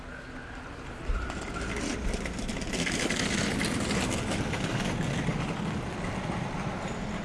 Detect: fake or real real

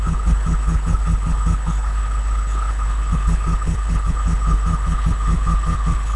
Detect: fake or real fake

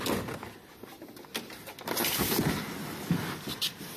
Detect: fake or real real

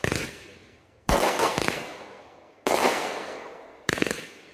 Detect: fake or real fake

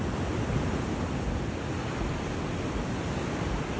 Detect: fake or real real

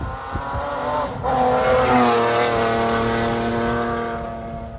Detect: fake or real real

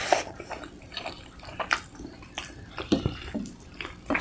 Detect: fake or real fake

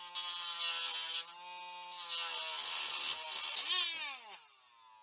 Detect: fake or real real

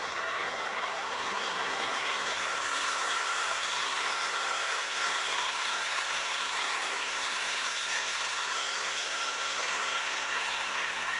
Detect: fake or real fake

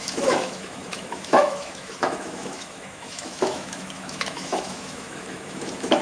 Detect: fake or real fake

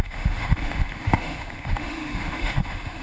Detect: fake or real fake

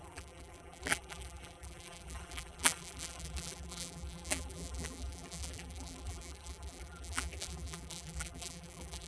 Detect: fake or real fake